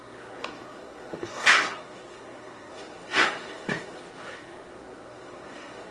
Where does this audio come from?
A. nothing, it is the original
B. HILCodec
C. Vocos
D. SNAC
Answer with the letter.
D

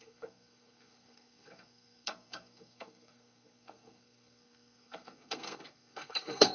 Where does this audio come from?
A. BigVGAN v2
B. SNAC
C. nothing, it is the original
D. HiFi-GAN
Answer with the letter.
B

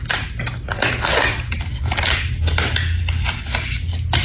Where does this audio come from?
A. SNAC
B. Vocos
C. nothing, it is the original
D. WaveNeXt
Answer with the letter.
C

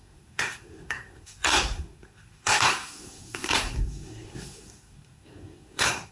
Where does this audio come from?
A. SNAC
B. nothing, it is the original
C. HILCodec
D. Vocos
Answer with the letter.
A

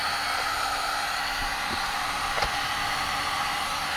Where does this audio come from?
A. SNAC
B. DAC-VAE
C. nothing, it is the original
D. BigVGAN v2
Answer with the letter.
C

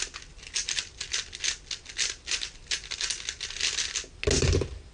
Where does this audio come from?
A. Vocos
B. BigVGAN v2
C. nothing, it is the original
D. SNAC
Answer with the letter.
C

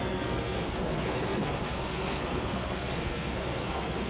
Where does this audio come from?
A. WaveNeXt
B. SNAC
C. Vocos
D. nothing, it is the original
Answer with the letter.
B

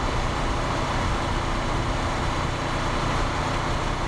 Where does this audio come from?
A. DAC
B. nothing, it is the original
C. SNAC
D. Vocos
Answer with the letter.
B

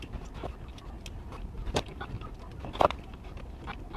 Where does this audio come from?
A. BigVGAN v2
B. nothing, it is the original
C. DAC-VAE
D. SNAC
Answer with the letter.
B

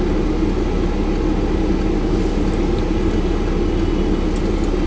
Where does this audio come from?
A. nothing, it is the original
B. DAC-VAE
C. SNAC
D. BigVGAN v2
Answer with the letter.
A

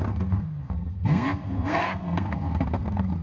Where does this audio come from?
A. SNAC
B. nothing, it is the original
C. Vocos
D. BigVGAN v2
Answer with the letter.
A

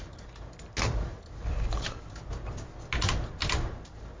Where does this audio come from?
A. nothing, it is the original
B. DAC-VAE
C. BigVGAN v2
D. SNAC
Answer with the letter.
A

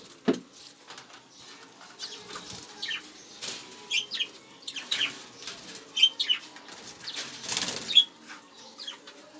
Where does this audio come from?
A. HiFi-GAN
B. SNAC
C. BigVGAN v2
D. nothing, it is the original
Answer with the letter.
D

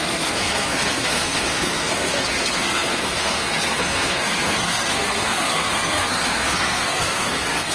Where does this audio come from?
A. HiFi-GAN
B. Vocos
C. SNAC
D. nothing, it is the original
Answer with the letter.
C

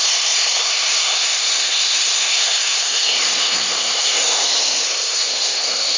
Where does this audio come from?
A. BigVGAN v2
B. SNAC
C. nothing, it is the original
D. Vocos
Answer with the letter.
B